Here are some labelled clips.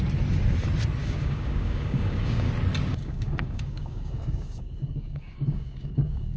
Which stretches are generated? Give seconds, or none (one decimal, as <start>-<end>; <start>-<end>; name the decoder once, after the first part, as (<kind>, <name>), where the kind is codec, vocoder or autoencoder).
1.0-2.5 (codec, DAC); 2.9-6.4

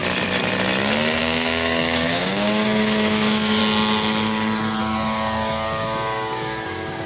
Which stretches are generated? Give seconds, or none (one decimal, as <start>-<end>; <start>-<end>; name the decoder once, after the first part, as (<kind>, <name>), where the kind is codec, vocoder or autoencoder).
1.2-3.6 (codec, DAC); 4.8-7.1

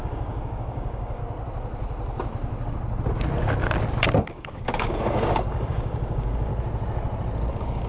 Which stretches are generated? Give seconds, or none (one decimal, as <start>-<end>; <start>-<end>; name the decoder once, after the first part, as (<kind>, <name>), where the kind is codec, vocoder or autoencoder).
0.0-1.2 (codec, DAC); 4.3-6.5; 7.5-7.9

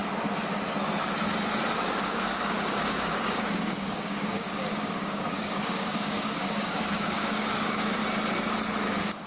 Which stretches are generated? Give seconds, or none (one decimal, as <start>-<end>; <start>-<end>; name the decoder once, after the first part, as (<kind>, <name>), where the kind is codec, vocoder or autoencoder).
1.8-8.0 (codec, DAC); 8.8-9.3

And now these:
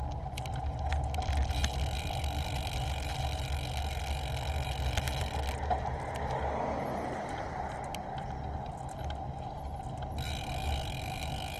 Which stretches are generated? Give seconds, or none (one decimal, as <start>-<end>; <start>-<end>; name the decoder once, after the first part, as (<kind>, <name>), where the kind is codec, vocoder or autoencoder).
none